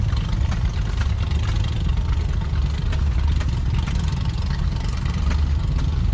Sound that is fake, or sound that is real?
real